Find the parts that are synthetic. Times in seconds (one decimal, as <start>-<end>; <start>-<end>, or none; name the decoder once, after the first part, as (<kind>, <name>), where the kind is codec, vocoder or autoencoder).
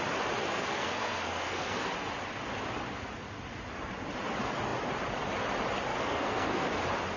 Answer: 0.4-1.9 (codec, SNAC); 5.9-6.7